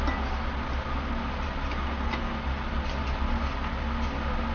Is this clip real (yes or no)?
yes